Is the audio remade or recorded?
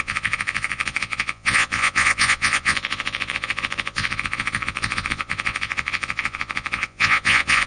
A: remade